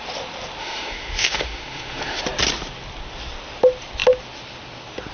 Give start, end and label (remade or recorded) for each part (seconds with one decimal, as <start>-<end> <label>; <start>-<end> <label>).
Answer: 0.0-0.6 recorded; 0.6-2.2 remade; 2.2-5.1 recorded